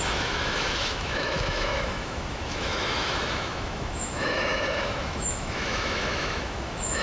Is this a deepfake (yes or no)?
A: yes